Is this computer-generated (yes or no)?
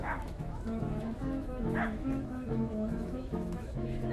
yes